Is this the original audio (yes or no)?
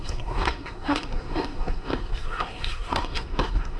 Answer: no